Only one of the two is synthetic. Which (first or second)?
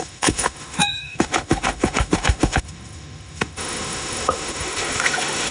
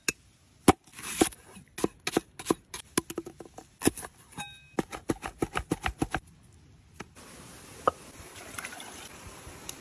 first